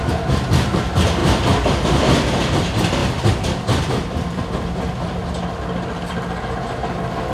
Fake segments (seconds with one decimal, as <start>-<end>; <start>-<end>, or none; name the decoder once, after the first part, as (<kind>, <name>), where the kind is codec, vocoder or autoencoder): 1.2-2.0 (vocoder, BigVGAN v2); 3.0-4.4